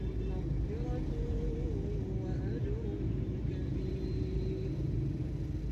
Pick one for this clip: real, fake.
real